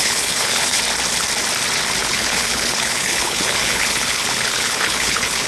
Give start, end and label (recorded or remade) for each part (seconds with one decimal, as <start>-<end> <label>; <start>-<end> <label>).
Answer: 0.0-0.8 remade; 0.8-2.0 recorded; 2.0-5.5 remade